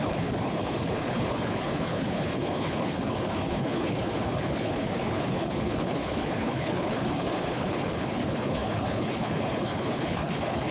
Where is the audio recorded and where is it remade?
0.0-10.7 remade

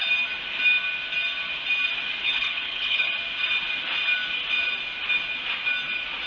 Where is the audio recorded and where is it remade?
0.0-2.2 recorded; 2.2-3.1 remade; 3.1-6.3 recorded

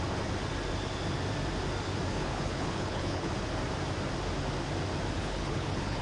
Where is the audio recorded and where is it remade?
0.0-2.1 recorded; 2.1-3.3 remade; 3.3-5.2 recorded; 5.2-6.0 remade